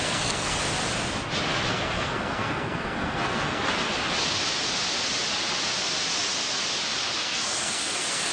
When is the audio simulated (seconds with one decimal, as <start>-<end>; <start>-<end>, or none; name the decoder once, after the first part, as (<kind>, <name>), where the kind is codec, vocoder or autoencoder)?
0.0-0.6 (codec, SNAC); 1.7-3.7; 7.2-8.3